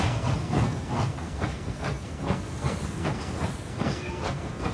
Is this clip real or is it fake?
fake